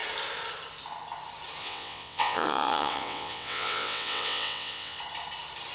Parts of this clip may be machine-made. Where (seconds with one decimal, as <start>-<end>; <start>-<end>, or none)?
1.6-5.0

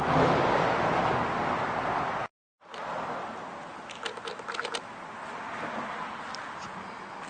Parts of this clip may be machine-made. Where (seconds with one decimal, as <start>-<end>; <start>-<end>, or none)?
none

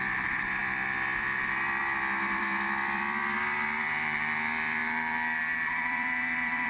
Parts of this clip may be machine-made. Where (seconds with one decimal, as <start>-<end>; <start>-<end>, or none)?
0.0-4.8; 5.4-6.7

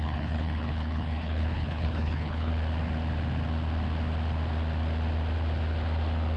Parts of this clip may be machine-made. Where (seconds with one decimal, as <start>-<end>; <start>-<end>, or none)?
0.0-2.5

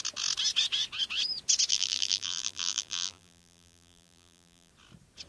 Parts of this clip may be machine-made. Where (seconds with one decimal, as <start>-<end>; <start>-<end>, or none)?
1.7-4.7